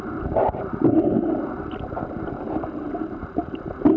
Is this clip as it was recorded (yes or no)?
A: yes